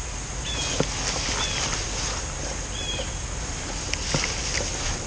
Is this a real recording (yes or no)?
yes